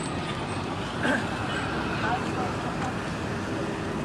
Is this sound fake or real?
real